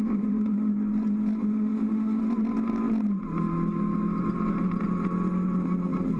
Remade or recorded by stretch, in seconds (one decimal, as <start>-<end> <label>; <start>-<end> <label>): 0.0-0.7 remade; 0.7-1.4 recorded; 1.4-2.2 remade; 2.2-6.2 recorded